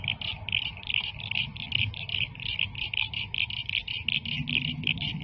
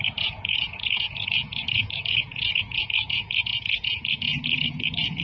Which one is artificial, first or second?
second